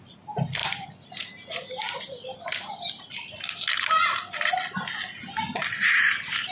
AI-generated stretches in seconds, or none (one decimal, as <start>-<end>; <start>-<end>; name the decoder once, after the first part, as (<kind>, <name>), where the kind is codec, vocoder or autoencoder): 5.6-6.5 (vocoder, BigVGAN v2)